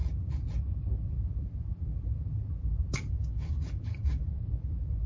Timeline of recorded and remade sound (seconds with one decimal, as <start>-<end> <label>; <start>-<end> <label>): 0.0-3.1 recorded; 3.1-4.3 remade; 4.3-5.1 recorded